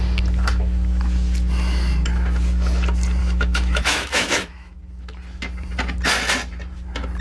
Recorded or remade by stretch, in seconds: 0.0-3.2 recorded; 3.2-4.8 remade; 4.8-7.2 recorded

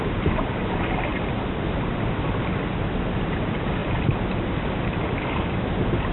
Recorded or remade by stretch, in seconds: 0.0-1.1 recorded; 1.1-1.6 remade; 1.6-3.8 recorded; 3.8-4.8 remade; 4.8-6.1 recorded

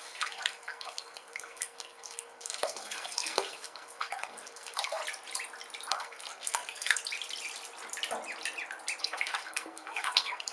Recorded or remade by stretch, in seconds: 0.0-5.0 remade; 5.0-5.9 recorded; 5.9-7.0 remade; 7.0-9.0 recorded; 9.0-10.5 remade

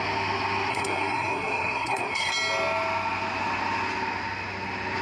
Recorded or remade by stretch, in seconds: 0.0-0.7 recorded; 0.7-2.3 remade; 2.3-5.0 recorded

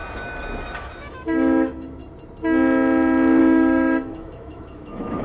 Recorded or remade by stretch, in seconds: 0.0-0.6 recorded; 0.6-2.0 remade; 2.0-3.4 recorded; 3.4-5.2 remade

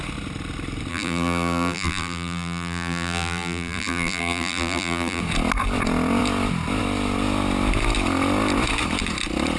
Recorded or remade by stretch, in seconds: 0.0-0.9 recorded; 0.9-5.2 remade; 5.2-9.6 recorded

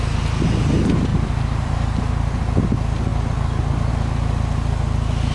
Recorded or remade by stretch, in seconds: 0.0-1.1 recorded; 1.1-2.2 remade; 2.2-5.3 recorded